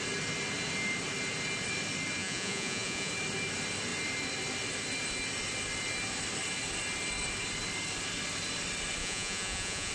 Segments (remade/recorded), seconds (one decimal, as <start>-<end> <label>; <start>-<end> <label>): 0.0-2.2 recorded; 2.2-3.1 remade; 3.1-9.0 recorded; 9.0-9.9 remade